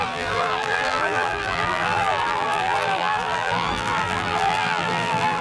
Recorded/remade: remade